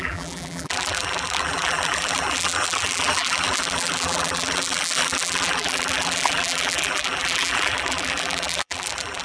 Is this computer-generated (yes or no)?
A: yes